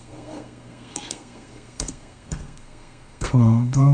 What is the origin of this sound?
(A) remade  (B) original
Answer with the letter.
A